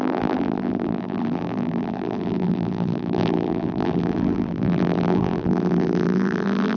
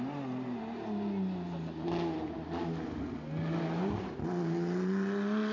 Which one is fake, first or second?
first